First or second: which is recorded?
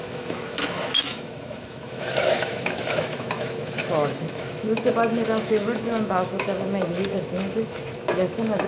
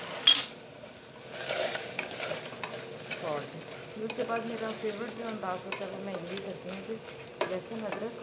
second